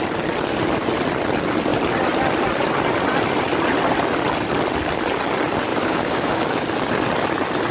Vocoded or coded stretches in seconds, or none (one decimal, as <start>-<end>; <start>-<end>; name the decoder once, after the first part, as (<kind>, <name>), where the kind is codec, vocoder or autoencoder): 5.7-6.6 (codec, DAC)